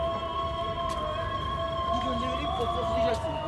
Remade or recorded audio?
recorded